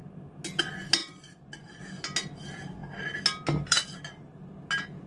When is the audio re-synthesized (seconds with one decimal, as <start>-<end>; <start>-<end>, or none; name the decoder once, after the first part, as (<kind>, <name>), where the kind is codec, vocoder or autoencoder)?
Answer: 1.0-1.8 (vocoder, Vocos)